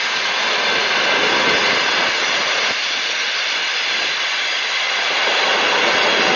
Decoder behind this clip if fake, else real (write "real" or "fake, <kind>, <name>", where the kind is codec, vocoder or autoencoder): real